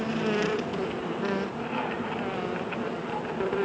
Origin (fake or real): real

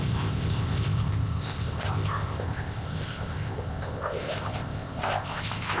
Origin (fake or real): fake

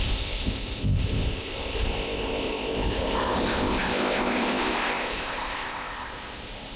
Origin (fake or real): fake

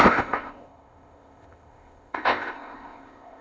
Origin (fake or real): fake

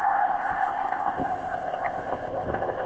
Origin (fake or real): fake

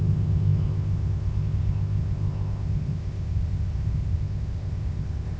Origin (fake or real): fake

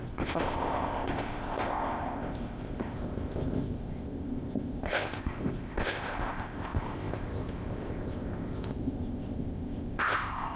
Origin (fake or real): fake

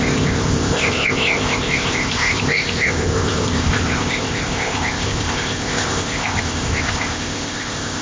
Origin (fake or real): fake